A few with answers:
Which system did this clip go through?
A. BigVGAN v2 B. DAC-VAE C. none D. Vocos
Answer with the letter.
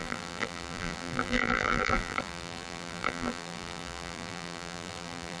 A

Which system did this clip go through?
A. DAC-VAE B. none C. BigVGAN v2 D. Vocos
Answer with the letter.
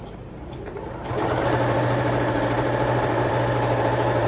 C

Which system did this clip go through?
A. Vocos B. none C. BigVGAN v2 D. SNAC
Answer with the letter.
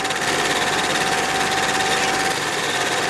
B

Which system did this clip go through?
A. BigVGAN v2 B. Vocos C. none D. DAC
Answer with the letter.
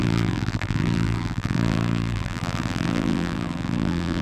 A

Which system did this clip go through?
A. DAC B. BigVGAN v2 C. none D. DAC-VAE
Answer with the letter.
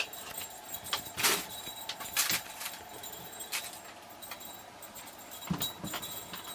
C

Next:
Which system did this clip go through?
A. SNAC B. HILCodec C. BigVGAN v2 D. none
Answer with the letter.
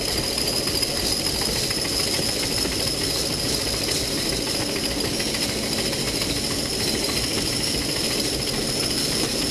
D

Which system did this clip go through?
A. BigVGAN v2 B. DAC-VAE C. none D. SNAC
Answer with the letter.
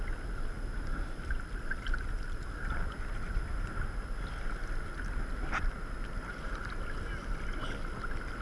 C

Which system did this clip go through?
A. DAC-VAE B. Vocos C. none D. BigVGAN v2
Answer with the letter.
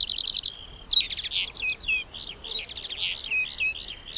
C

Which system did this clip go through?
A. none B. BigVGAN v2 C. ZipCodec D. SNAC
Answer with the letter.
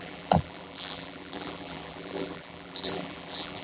B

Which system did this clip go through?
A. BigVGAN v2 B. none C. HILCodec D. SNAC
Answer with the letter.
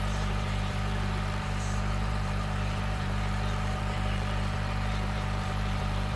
A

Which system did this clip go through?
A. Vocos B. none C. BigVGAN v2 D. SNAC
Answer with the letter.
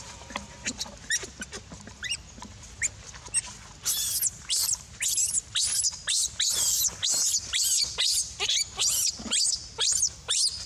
B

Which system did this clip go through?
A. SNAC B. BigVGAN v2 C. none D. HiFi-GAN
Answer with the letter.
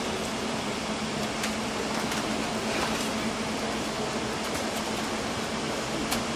C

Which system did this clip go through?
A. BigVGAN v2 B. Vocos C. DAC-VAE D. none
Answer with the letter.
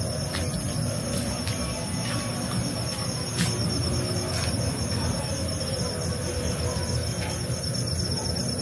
D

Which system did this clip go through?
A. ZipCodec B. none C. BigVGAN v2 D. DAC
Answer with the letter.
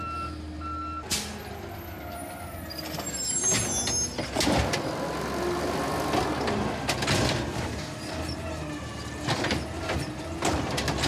B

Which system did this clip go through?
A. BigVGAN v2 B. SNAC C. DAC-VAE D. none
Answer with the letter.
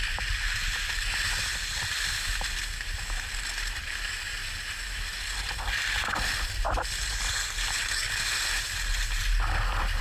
D